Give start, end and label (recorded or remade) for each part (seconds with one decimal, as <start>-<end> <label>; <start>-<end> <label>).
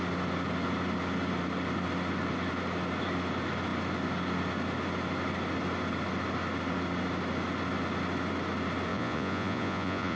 0.0-8.9 recorded; 8.9-10.2 remade